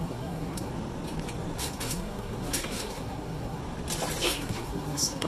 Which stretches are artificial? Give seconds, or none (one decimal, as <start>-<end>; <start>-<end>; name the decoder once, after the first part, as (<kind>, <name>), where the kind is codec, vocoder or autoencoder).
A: 0.0-0.7 (codec, SNAC); 1.6-3.6; 4.2-5.3